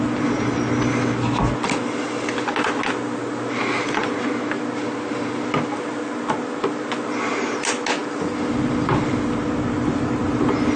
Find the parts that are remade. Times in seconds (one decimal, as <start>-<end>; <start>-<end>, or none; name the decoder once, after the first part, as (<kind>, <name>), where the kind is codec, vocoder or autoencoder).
none

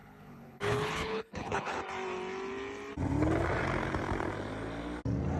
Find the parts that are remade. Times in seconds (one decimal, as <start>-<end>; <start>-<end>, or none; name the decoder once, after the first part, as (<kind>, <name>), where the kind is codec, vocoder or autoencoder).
0.0-1.8 (codec, HILCodec)

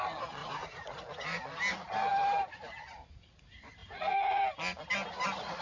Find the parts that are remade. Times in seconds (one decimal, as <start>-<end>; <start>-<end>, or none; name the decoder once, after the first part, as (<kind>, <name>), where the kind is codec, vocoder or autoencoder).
0.4-1.0 (vocoder, Vocos); 3.8-4.4

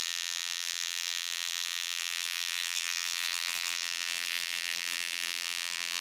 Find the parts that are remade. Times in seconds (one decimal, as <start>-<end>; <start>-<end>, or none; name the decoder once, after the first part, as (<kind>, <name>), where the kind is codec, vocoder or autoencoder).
0.0-6.0 (vocoder, BigVGAN v2)